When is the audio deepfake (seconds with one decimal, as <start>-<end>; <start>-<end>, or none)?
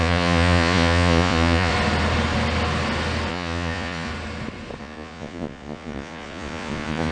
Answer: 0.0-1.7; 3.3-4.1; 4.8-7.1